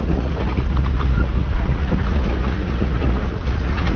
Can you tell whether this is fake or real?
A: fake